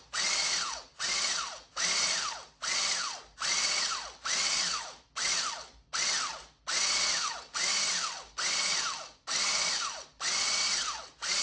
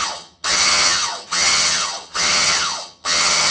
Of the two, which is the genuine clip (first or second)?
first